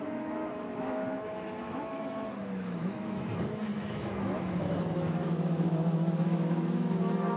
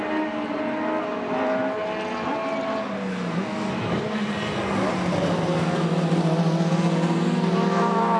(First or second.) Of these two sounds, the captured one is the second